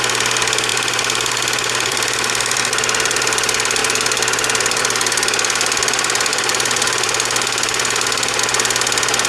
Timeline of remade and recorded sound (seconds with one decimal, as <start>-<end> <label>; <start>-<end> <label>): 0.0-0.7 recorded; 0.7-2.6 remade; 2.6-6.3 recorded; 6.3-8.4 remade; 8.4-9.3 recorded